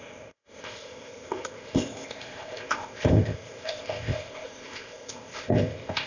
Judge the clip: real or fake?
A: fake